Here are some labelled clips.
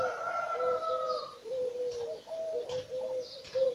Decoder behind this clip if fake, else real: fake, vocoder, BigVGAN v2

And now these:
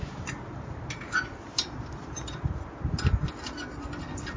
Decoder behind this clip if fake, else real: real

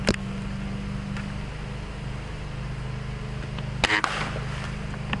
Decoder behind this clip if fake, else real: real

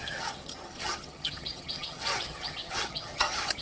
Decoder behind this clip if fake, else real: fake, vocoder, HiFi-GAN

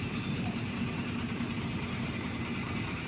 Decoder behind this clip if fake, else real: fake, vocoder, BigVGAN v2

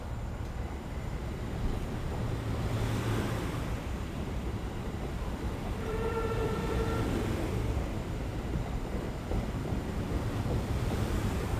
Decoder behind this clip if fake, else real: fake, vocoder, BigVGAN v2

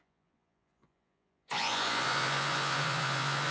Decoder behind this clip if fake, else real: fake, vocoder, Vocos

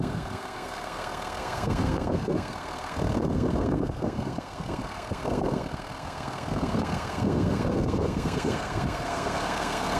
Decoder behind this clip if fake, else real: fake, codec, SNAC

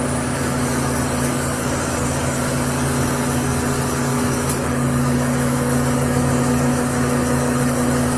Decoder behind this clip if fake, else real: fake, codec, DAC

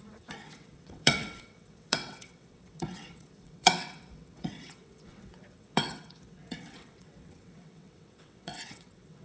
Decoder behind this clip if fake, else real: fake, vocoder, WaveNeXt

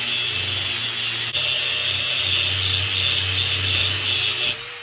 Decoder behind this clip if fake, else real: real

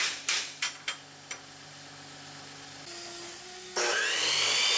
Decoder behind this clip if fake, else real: real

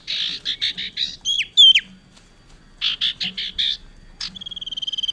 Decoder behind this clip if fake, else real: real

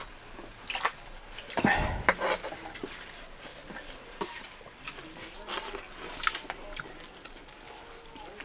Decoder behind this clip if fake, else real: real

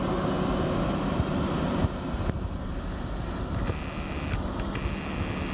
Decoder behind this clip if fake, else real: real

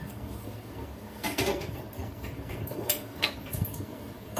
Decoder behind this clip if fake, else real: fake, codec, SNAC